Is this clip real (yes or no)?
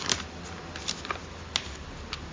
yes